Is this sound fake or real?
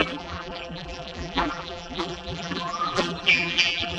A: fake